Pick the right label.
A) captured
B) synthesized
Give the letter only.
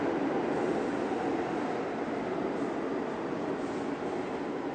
B